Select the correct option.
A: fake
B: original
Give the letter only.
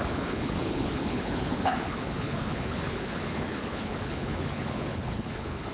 A